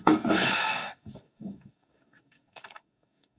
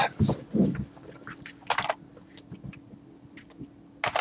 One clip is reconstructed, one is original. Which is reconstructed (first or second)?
first